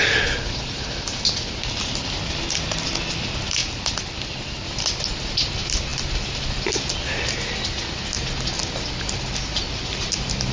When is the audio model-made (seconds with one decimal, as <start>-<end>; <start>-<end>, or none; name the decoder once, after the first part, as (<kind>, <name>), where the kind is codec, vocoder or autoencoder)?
none

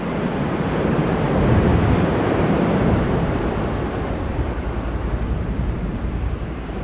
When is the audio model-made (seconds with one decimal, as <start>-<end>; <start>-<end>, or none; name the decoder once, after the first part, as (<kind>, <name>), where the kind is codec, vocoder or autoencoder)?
0.0-1.7 (vocoder, BigVGAN v2); 2.4-4.3; 4.9-6.8

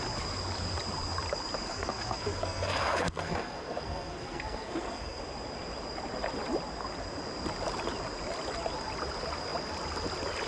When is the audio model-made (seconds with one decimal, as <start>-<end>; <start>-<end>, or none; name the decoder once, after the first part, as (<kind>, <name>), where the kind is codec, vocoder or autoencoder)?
1.7-5.2 (codec, SNAC)

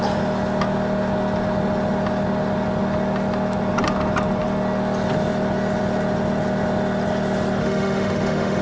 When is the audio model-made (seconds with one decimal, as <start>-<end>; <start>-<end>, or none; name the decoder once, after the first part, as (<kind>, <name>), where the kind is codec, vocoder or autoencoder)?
7.6-8.6 (autoencoder, DAC-VAE)